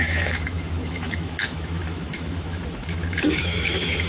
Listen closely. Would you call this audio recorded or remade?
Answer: remade